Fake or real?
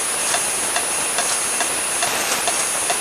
real